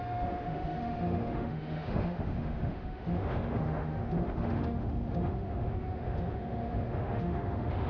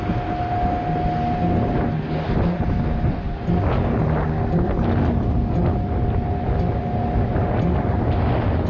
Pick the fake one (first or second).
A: first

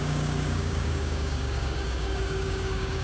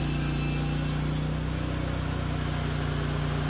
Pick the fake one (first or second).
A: first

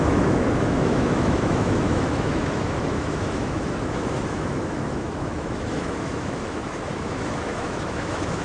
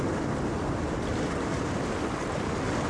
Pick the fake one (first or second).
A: first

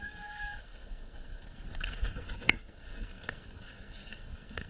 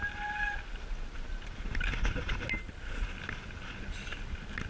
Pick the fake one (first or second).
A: first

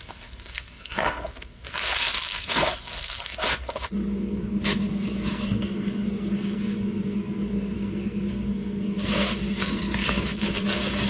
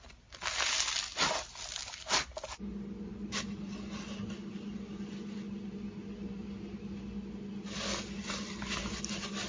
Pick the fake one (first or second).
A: first